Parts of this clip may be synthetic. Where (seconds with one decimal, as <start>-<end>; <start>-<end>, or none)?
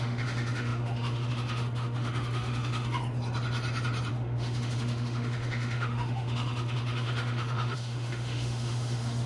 0.0-3.0; 4.1-9.3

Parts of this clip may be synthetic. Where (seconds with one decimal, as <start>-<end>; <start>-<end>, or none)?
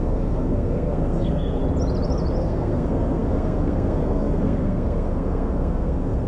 0.0-1.6; 2.4-6.3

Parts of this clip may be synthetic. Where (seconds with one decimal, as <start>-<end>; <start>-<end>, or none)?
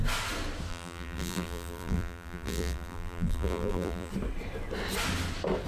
0.7-4.1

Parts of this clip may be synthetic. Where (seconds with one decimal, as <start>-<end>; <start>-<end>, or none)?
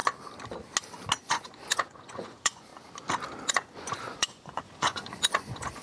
1.2-2.7; 3.4-5.8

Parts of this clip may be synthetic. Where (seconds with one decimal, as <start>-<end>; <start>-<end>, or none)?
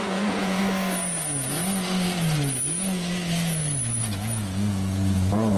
0.0-0.6; 4.0-5.6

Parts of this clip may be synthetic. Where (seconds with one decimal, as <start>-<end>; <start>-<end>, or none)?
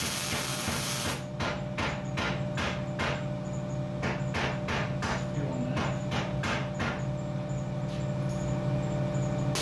0.5-1.1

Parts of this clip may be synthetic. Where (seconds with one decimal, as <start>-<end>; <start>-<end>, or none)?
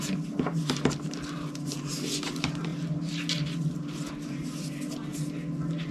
none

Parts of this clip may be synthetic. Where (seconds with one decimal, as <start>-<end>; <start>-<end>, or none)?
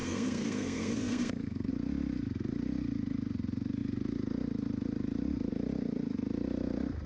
0.0-1.7